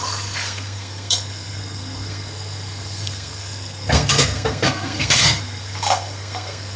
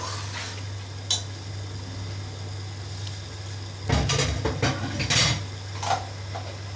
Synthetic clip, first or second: first